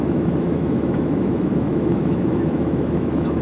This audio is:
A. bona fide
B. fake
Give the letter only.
B